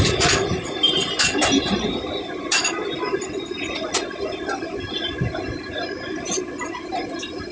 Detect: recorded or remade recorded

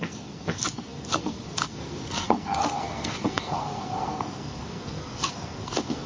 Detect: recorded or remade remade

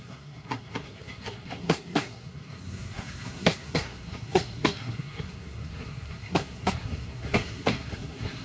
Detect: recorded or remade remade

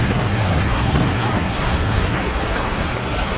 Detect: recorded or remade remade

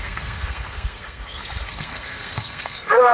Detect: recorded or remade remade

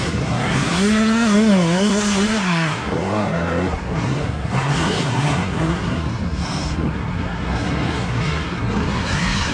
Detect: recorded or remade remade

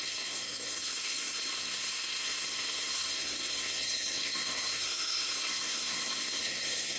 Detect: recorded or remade remade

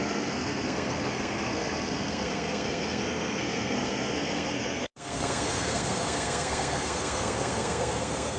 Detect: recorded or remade remade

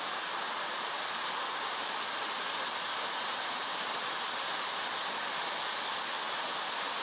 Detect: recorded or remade recorded